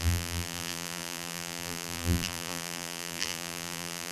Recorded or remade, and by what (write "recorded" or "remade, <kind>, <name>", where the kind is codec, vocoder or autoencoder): remade, vocoder, BigVGAN v2